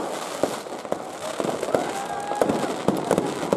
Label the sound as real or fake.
real